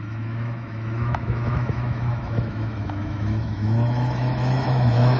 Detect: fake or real fake